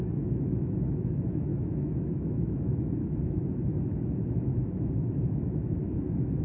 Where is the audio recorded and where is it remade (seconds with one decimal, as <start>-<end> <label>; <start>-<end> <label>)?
0.0-6.4 remade